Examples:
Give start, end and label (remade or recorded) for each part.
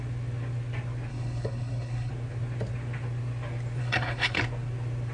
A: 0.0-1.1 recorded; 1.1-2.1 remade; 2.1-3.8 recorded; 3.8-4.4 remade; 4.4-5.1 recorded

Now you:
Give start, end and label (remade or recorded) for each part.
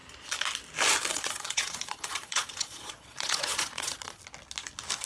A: 0.0-1.1 recorded; 1.1-4.2 remade; 4.2-5.1 recorded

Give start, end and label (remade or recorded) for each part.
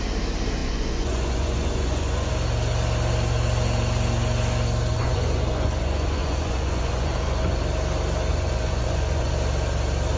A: 0.0-0.6 recorded; 0.6-2.3 remade; 2.3-4.9 recorded; 4.9-7.6 remade; 7.6-8.3 recorded; 8.3-9.3 remade; 9.3-10.2 recorded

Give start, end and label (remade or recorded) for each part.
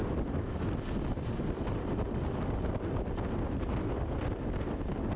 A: 0.0-5.2 recorded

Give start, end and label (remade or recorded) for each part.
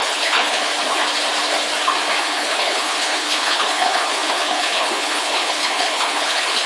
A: 0.0-0.7 remade; 0.7-2.2 recorded; 2.2-6.7 remade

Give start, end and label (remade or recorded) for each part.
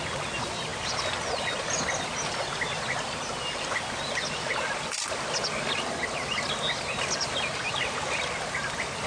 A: 0.0-9.1 recorded